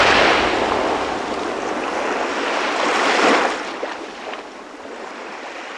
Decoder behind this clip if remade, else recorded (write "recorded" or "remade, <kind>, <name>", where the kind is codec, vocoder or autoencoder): recorded